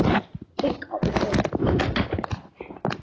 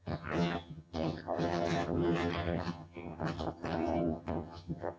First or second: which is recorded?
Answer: first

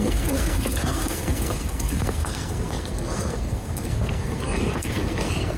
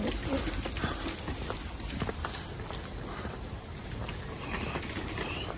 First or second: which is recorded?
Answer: second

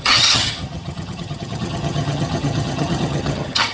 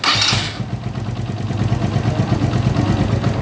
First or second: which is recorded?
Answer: second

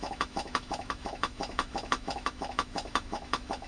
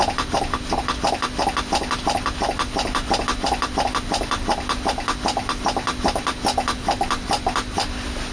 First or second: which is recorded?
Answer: second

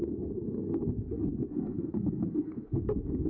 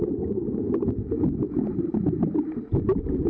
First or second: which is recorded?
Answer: second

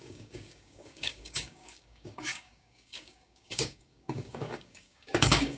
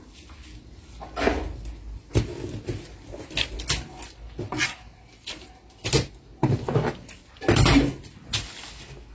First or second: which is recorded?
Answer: second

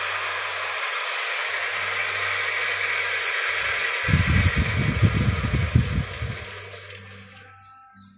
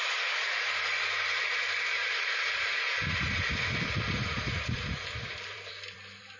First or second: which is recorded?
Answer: first